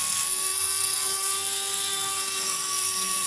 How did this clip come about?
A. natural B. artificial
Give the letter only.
B